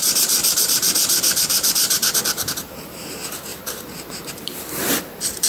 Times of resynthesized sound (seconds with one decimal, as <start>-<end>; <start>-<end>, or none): 0.0-0.4; 1.3-5.5